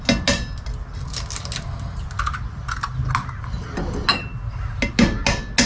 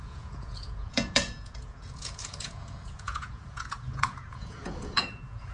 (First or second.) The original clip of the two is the first